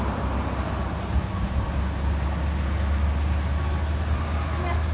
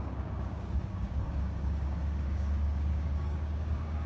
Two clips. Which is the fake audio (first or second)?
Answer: second